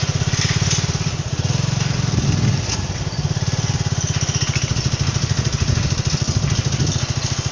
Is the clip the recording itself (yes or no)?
yes